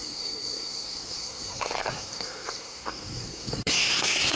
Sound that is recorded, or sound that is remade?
remade